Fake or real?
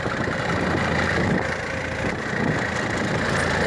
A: real